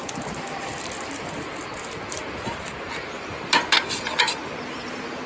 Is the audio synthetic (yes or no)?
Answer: no